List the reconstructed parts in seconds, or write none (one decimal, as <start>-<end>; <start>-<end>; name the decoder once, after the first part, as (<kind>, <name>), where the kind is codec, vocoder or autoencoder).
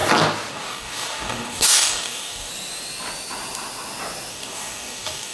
0.5-2.5 (codec, DAC); 4.3-5.3